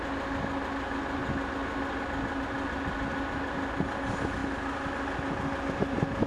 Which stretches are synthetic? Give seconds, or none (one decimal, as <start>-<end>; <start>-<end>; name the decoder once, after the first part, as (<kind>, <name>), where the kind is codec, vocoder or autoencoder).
none